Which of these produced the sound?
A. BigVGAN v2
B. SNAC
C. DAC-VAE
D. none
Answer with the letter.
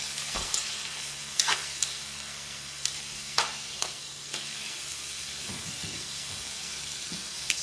B